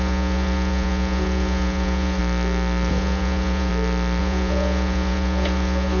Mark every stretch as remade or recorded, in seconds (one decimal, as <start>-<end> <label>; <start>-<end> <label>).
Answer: 0.0-2.2 remade; 2.2-2.9 recorded; 2.9-3.7 remade; 3.7-4.2 recorded; 4.2-6.0 remade